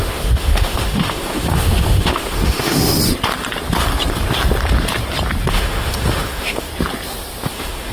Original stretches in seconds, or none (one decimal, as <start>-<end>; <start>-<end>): 3.0-5.5; 6.7-7.5